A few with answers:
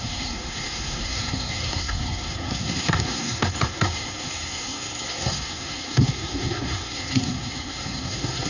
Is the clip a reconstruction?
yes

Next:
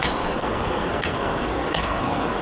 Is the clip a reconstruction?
yes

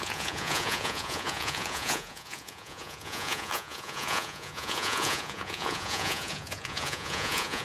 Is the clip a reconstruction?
yes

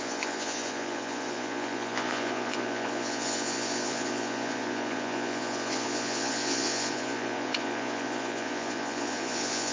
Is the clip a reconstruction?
yes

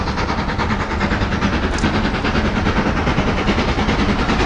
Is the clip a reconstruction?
no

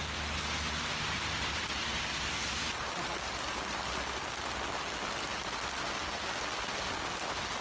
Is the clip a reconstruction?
no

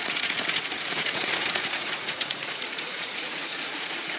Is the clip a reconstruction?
yes